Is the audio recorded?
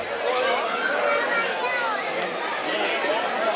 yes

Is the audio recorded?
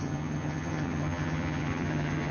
no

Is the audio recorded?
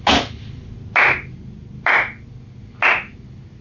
yes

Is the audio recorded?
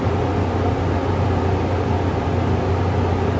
yes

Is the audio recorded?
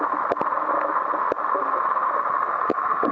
yes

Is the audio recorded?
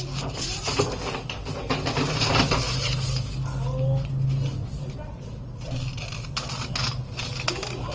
yes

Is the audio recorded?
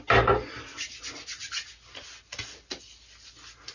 yes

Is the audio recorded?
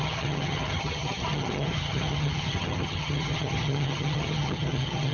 no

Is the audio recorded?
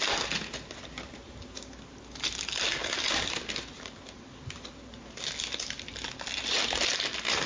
yes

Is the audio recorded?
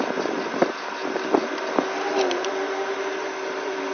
yes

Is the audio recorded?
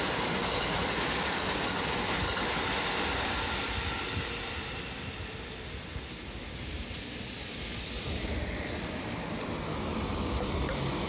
yes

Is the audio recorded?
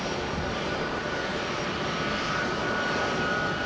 yes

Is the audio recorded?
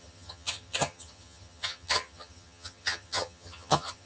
no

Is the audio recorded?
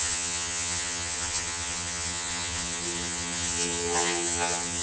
no